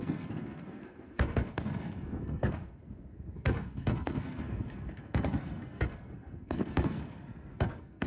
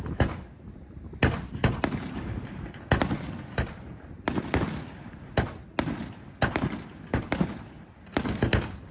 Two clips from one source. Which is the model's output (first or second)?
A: first